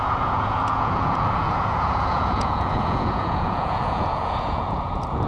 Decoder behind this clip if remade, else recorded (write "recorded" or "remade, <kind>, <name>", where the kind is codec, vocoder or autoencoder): remade, vocoder, Vocos